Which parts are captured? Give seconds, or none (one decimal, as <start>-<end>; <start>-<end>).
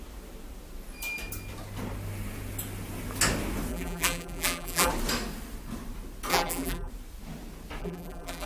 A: 0.0-3.7; 4.9-6.3; 6.9-7.8